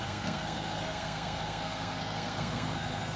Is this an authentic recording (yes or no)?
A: no